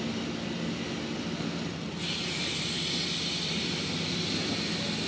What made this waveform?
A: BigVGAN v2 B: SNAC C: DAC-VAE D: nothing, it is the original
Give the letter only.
D